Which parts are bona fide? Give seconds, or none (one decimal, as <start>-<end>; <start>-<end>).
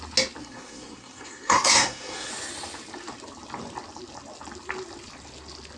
0.0-0.4; 2.3-5.8